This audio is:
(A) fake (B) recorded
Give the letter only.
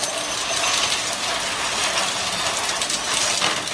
B